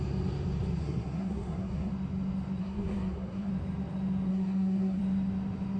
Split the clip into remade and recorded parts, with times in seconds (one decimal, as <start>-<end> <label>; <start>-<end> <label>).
0.0-0.8 recorded; 0.8-1.9 remade; 1.9-2.6 recorded; 2.6-3.5 remade; 3.5-4.3 recorded; 4.3-5.0 remade; 5.0-5.8 recorded